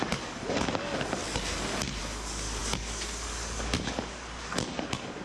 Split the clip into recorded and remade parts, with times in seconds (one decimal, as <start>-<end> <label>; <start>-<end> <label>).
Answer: 0.0-1.2 remade; 1.2-2.0 recorded; 2.0-5.2 remade